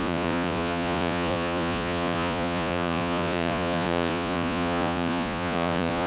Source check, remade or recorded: remade